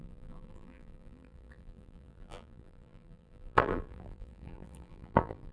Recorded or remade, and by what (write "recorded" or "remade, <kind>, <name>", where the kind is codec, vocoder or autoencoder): remade, vocoder, BigVGAN v2